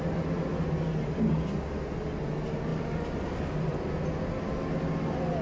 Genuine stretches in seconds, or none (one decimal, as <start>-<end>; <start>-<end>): 0.0-2.7; 3.9-5.4